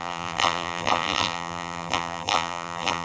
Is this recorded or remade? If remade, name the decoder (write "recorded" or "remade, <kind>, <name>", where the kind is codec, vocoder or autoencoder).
remade, vocoder, BigVGAN v2